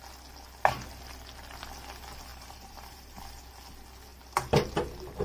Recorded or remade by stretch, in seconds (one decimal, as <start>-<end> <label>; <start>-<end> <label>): 0.0-2.3 recorded; 2.3-3.2 remade; 3.2-5.2 recorded